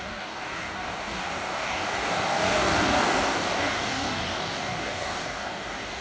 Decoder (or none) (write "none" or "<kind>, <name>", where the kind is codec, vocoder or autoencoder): codec, DAC